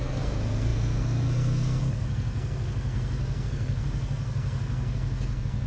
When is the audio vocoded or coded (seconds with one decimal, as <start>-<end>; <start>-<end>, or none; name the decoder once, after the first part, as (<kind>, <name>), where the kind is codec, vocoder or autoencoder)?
0.0-5.7 (codec, SNAC)